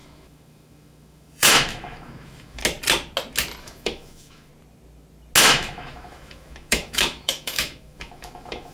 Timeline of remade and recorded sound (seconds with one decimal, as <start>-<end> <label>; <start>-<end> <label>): 0.0-2.6 remade; 2.6-3.6 recorded; 3.6-4.5 remade; 4.5-5.4 recorded; 5.4-8.7 remade